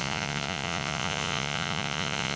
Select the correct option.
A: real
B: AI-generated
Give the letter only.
B